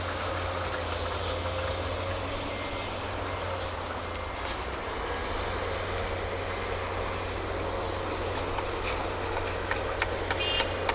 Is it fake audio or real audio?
real